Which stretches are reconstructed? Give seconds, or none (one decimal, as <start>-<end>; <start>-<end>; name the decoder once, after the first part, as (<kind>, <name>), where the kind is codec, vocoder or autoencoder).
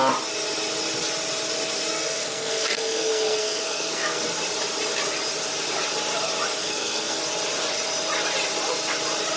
1.9-4.2 (codec, SNAC); 6.6-7.2